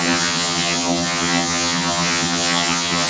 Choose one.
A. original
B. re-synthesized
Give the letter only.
B